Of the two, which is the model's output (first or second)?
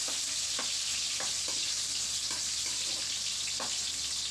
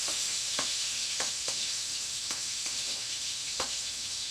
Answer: second